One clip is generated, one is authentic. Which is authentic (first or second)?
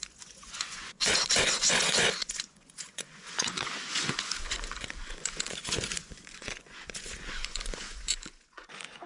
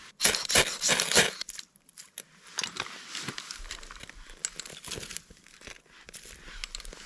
second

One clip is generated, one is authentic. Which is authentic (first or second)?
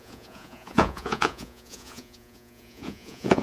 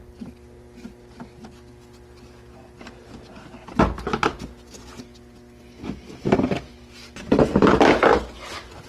second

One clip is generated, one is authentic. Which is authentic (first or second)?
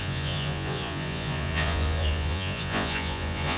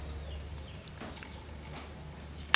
second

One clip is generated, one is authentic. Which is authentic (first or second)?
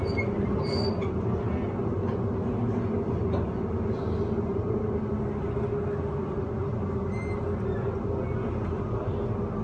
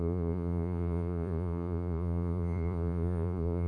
first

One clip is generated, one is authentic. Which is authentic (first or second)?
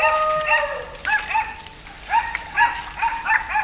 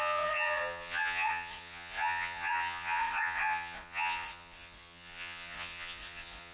first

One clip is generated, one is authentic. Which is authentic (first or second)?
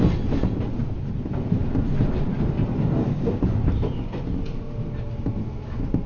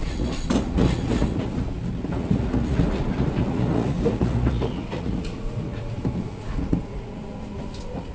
first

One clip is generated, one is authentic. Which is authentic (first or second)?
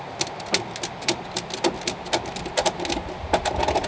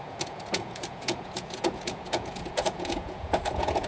first